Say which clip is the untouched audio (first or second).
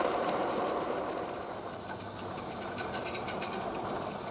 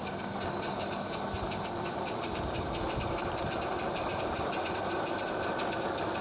second